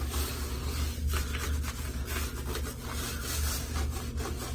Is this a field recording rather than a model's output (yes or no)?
yes